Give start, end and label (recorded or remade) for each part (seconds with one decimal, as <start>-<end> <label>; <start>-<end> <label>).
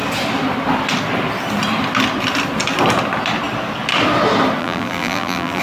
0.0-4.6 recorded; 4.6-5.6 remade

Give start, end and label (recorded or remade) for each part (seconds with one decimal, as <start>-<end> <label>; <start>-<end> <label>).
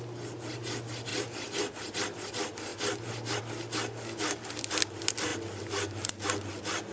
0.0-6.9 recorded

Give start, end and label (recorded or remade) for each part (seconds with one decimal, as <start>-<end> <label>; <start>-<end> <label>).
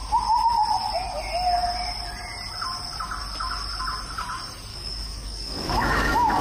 0.0-4.7 recorded; 4.7-6.4 remade